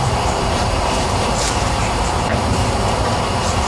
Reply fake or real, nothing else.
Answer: fake